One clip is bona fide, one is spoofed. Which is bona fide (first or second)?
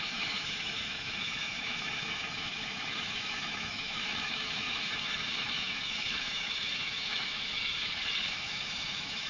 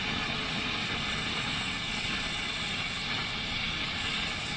second